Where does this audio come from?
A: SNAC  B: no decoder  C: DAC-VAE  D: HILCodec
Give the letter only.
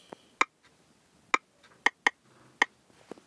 B